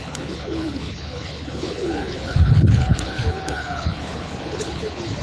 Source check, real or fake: fake